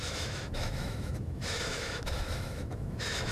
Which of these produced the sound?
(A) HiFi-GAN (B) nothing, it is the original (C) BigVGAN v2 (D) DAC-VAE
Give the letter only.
D